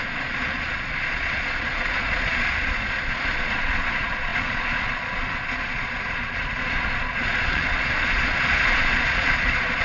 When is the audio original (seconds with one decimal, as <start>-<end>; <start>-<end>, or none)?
none